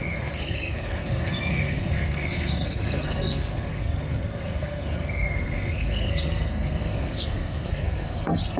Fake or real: fake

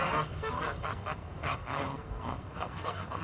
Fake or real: fake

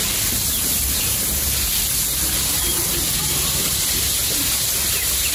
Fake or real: real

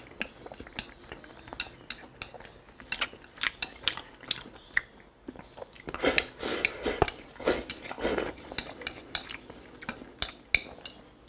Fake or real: real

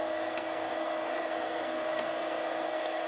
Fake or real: fake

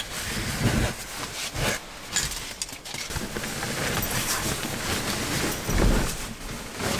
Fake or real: real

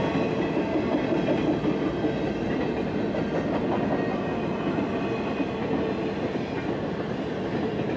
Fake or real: real